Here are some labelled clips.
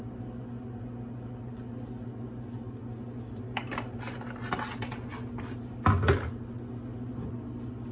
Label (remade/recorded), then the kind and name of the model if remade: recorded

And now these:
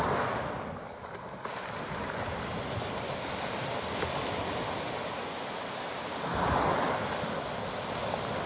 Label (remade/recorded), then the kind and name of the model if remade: recorded